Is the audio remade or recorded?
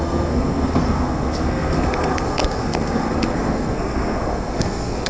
remade